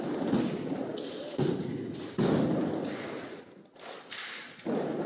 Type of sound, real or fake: real